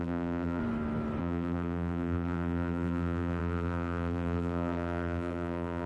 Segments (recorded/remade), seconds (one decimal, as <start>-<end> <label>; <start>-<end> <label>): 0.0-0.6 remade; 0.6-1.2 recorded; 1.2-5.9 remade